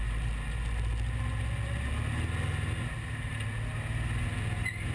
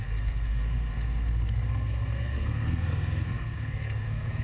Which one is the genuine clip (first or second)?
first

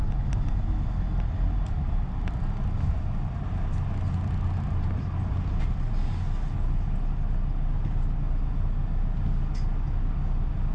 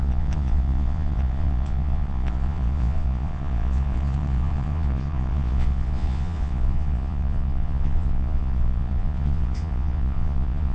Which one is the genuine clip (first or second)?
first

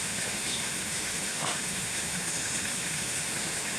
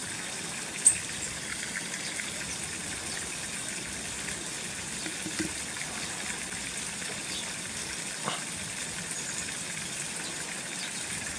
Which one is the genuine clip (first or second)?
second